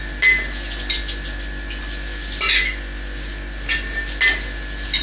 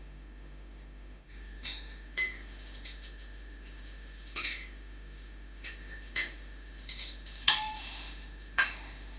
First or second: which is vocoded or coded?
second